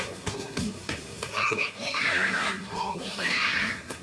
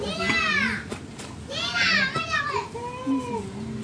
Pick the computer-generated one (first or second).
first